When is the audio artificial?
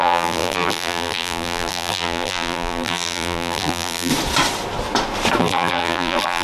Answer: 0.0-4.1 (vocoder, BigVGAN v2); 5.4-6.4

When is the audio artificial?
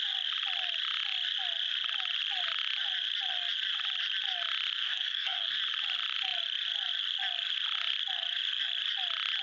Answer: 4.8-5.5 (codec, SNAC)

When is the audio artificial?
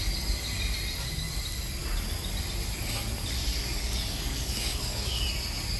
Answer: 3.6-5.2 (codec, DAC)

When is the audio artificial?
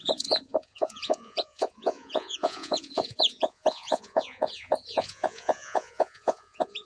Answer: 0.0-6.9 (vocoder, Vocos)